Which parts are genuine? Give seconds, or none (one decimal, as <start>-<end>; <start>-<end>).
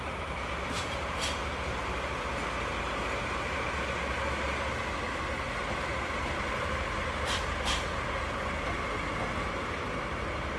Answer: 0.0-0.8; 2.2-10.6